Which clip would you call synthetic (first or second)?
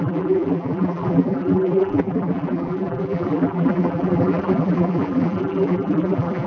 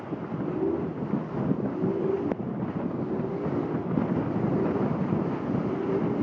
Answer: first